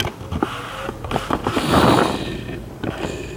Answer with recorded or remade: recorded